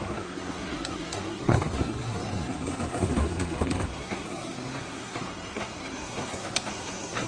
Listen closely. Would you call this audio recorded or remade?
remade